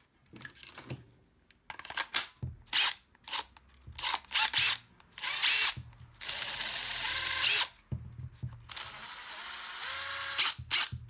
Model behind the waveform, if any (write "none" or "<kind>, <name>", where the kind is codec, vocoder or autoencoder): none